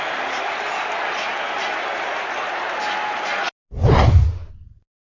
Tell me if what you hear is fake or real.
real